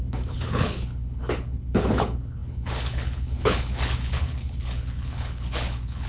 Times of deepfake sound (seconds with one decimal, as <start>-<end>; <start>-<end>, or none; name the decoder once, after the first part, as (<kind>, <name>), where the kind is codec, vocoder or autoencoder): 0.0-6.1 (codec, HILCodec)